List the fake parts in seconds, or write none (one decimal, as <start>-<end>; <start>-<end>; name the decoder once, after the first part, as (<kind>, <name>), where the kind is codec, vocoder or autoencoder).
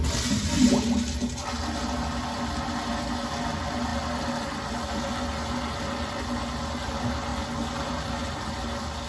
none